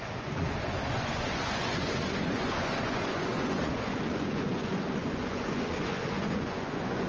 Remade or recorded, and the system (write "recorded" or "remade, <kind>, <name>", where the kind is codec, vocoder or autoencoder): remade, vocoder, Vocos